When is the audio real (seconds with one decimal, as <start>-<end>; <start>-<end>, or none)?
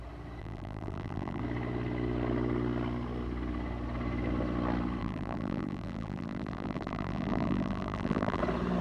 0.0-0.4; 1.4-5.0; 8.4-8.8